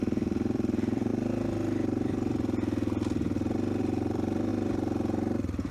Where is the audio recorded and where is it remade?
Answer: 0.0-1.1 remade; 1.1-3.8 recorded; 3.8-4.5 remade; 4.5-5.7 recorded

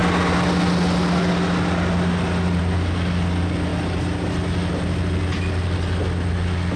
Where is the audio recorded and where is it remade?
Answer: 0.0-6.8 recorded

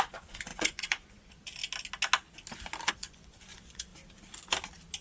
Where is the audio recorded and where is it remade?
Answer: 0.0-1.6 remade; 1.6-2.9 recorded; 2.9-3.9 remade; 3.9-5.0 recorded

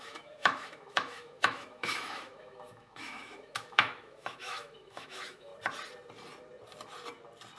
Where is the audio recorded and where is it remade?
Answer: 0.0-5.5 remade; 5.5-7.6 recorded

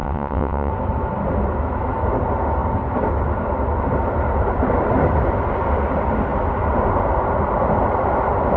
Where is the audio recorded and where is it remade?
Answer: 0.0-0.7 remade; 0.7-8.6 recorded

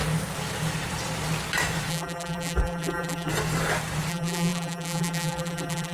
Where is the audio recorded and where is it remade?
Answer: 0.0-1.9 recorded; 1.9-3.3 remade; 3.3-4.1 recorded; 4.1-5.9 remade